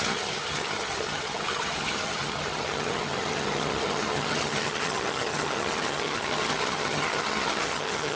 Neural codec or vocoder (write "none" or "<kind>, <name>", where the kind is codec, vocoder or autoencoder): vocoder, HiFi-GAN